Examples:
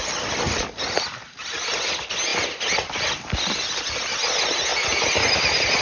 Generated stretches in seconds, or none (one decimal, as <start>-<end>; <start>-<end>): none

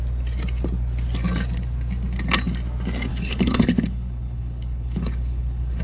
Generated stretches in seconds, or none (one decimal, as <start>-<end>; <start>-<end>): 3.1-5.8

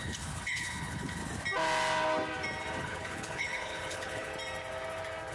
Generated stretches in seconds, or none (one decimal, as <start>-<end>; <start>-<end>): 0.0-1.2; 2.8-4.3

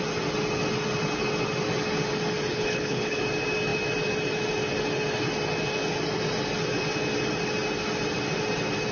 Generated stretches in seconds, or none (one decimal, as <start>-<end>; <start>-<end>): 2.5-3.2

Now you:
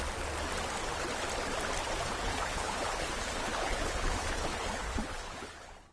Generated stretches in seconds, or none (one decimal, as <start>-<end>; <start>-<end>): 2.2-5.9